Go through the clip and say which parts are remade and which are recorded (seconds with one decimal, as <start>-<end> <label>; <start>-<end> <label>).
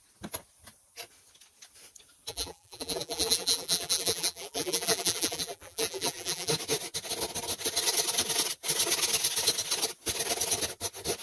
0.0-2.3 recorded; 2.3-6.5 remade; 6.5-11.2 recorded